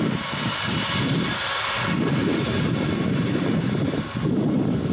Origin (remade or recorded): recorded